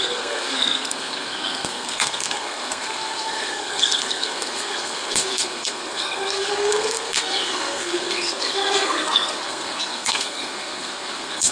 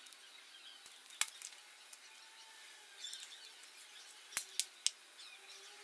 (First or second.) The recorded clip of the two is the second